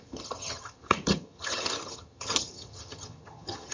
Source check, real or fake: fake